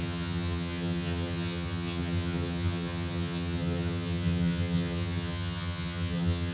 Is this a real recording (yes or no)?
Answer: no